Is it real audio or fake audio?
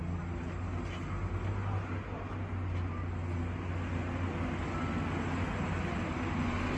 real